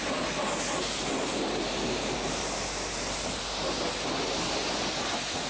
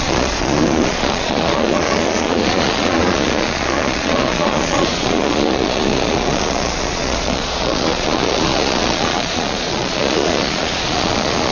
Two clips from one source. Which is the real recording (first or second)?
first